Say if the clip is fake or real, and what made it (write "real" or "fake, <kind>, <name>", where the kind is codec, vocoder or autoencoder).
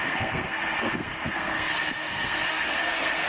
fake, codec, SNAC